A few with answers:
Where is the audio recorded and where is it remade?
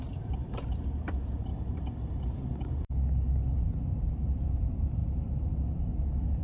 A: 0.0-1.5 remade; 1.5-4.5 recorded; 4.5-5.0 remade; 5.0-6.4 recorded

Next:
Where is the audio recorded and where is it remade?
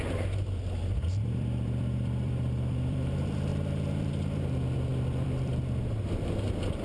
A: 0.0-6.8 remade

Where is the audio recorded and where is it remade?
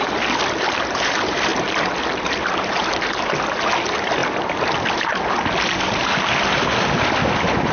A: 0.0-7.7 recorded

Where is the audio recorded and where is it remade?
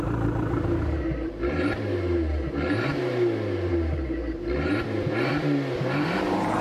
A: 0.0-2.9 remade; 2.9-3.7 recorded; 3.7-6.6 remade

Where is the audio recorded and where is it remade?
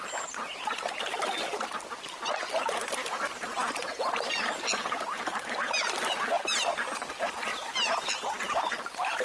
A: 0.0-6.4 recorded; 6.4-7.1 remade; 7.1-7.5 recorded; 7.5-8.1 remade; 8.1-9.2 recorded